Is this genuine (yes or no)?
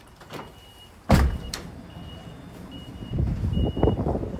no